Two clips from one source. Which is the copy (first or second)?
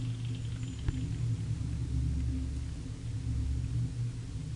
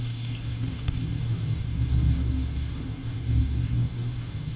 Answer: second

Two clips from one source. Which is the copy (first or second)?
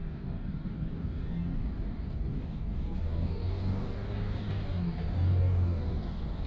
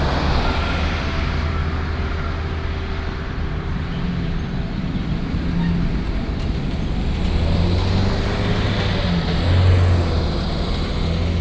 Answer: first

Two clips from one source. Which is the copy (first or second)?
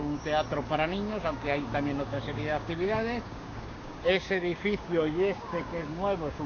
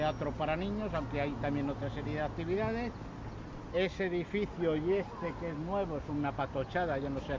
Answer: first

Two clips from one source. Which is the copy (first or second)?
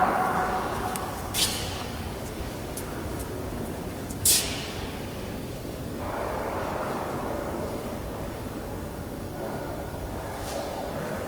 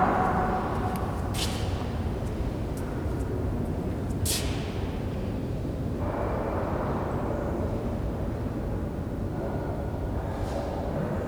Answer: first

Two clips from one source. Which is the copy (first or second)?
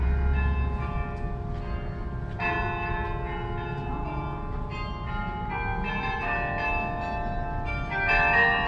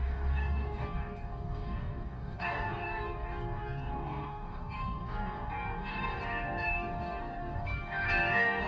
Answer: second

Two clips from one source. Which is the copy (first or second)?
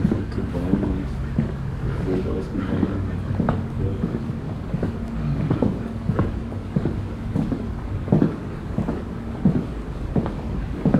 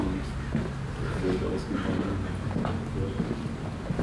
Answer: first